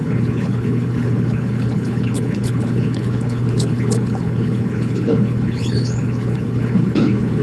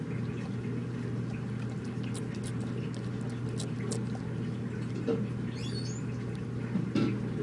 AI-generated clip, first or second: first